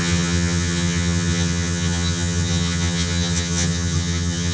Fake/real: fake